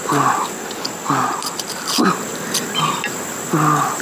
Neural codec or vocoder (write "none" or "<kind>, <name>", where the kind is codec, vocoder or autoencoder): none